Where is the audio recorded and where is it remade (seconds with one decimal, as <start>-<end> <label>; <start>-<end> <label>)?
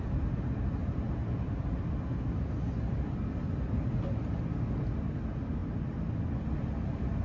0.0-7.2 recorded